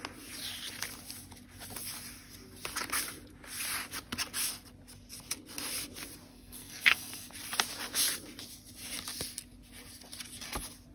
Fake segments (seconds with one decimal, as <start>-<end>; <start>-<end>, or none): 6.3-7.3